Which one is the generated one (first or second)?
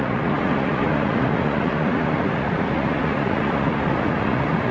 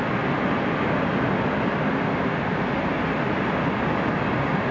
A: first